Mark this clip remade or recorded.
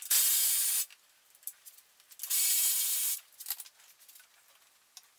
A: recorded